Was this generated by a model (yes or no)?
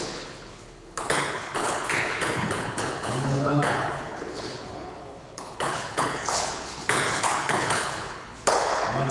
yes